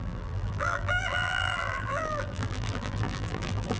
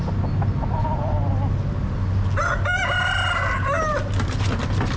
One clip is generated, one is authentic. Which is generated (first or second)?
first